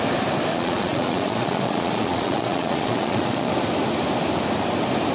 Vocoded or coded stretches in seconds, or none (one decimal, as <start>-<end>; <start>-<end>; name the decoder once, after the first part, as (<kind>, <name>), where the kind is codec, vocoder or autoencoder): 0.5-3.5 (vocoder, Vocos)